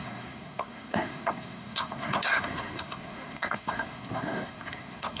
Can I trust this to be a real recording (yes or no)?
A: no